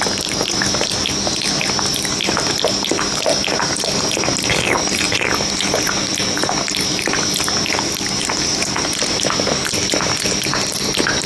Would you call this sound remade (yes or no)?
no